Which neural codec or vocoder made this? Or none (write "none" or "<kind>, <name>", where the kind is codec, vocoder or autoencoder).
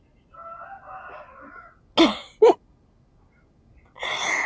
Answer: none